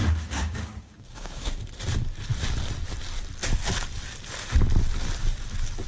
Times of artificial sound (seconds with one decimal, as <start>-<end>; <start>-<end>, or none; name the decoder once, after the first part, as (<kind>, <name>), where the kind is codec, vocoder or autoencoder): 0.0-1.5 (codec, DAC)